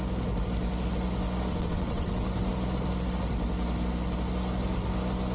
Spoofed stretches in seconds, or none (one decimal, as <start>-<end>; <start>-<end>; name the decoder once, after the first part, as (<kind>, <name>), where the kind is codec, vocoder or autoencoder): 1.5-2.1 (vocoder, WaveNeXt)